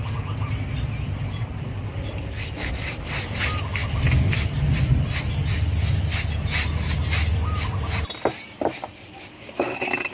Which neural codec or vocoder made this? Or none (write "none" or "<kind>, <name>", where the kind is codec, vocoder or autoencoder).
none